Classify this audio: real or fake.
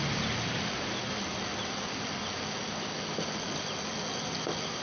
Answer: real